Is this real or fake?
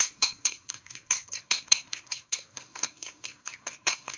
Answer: fake